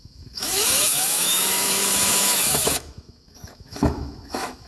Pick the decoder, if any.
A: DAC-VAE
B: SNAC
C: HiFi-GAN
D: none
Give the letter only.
A